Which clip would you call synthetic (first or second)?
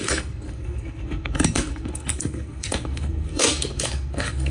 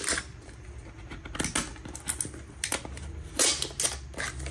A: first